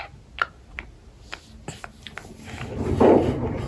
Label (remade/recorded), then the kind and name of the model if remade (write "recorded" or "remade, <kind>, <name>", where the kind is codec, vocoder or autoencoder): recorded